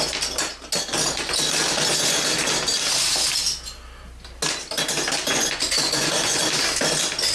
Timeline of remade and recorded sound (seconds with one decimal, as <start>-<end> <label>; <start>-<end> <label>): 0.0-5.3 recorded; 5.3-6.4 remade; 6.4-7.3 recorded